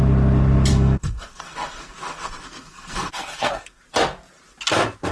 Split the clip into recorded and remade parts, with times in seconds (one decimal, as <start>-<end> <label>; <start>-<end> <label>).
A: 0.0-0.7 recorded; 0.7-3.8 remade; 3.8-5.1 recorded